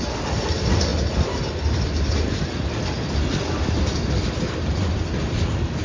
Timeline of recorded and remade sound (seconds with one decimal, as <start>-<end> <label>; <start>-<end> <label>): 0.0-5.8 recorded